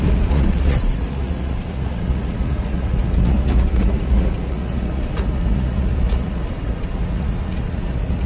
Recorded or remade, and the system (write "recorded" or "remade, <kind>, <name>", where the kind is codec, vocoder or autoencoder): remade, vocoder, Vocos